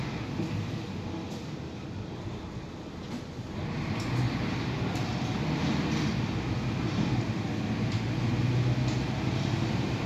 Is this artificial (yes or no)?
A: no